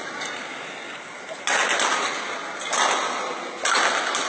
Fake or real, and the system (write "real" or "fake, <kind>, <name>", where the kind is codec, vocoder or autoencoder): real